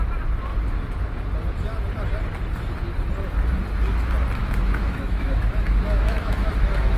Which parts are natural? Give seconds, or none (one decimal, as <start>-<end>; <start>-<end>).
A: 0.0-4.4; 6.5-7.0